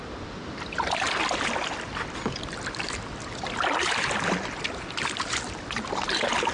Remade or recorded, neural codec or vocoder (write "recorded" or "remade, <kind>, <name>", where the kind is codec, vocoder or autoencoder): recorded